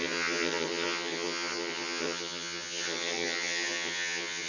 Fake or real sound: fake